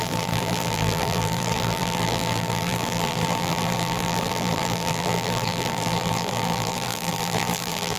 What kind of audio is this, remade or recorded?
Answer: remade